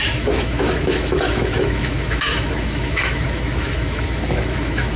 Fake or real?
fake